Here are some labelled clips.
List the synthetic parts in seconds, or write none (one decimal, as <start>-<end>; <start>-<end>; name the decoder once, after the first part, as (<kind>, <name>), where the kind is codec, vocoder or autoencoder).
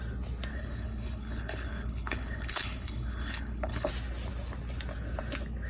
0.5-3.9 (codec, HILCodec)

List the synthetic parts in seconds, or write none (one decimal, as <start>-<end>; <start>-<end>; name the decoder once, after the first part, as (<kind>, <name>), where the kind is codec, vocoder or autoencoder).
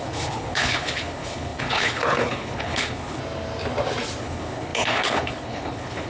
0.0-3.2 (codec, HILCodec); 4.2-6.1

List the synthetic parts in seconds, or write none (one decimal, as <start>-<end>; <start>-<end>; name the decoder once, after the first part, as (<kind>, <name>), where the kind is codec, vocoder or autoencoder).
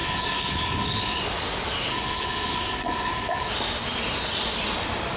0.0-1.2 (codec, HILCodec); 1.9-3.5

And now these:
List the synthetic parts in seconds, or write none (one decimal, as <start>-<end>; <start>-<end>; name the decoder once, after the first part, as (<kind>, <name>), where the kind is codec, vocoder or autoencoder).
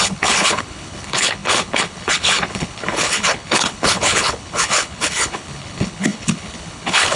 0.0-7.2 (codec, HILCodec)